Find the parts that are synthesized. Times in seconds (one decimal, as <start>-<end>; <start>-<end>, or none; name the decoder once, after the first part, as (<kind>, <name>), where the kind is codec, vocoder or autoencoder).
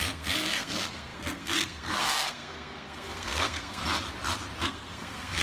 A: 0.0-3.8 (codec, SNAC); 4.6-5.4